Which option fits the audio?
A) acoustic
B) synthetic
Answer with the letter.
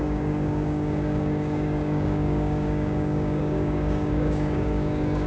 B